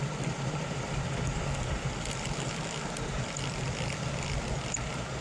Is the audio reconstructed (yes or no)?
no